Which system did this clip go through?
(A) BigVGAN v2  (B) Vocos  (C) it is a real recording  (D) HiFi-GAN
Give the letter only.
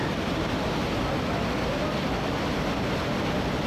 C